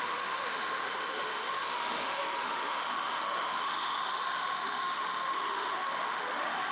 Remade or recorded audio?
remade